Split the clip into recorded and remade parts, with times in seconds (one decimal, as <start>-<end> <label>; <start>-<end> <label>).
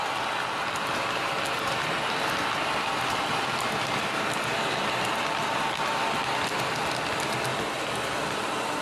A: 0.0-8.8 recorded